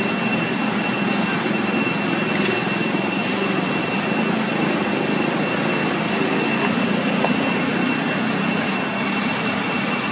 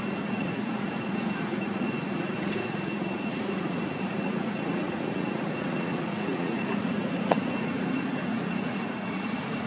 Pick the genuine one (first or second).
first